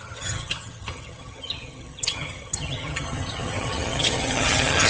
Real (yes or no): no